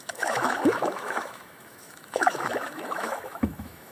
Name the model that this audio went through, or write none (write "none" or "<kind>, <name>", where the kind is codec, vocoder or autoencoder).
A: autoencoder, DAC-VAE